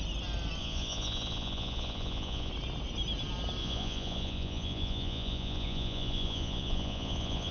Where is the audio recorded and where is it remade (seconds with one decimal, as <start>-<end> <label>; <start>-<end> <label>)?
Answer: 0.0-0.6 recorded; 0.6-2.5 remade; 2.5-3.6 recorded; 3.6-7.5 remade